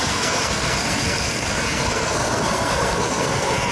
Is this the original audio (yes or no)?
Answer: no